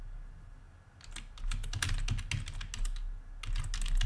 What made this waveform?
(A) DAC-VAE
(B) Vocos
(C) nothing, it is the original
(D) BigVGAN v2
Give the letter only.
C